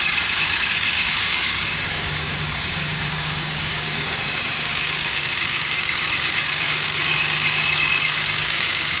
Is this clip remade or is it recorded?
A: remade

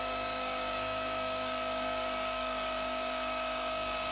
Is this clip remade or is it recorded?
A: remade